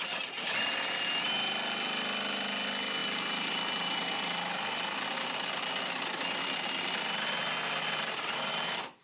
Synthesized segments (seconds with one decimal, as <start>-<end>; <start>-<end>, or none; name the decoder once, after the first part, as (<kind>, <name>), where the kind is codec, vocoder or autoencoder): none